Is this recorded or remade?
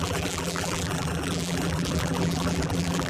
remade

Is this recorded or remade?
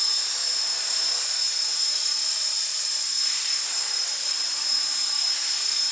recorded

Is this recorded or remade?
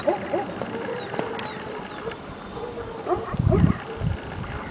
recorded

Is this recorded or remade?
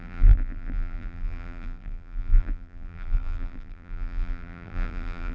remade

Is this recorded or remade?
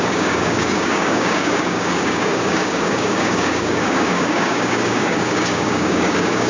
remade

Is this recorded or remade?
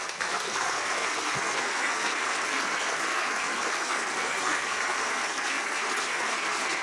remade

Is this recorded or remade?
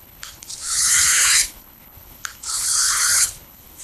remade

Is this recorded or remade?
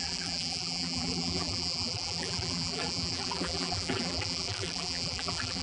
remade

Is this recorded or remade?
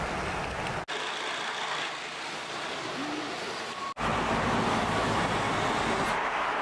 recorded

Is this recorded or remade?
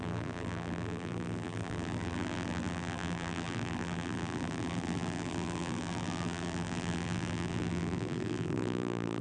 remade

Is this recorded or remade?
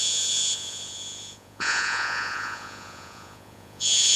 remade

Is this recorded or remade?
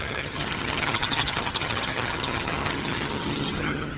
remade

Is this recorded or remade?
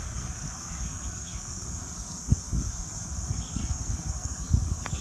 remade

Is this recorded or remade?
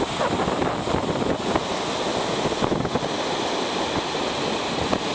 recorded